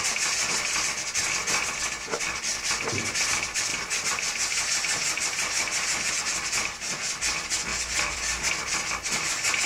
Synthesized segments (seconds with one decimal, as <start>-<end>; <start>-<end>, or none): 3.7-6.1; 7.7-8.5

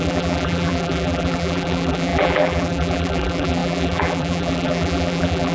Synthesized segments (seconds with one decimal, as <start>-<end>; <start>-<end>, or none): 0.0-5.5

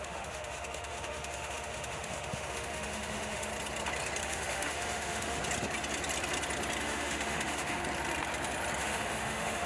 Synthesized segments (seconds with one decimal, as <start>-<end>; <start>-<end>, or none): 0.0-3.5; 4.2-5.4; 6.8-7.8; 8.8-9.7